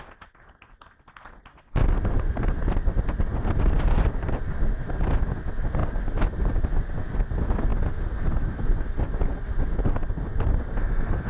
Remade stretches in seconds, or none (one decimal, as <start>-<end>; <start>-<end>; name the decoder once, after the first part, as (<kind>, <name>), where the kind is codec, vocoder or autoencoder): none